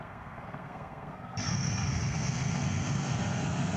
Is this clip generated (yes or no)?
yes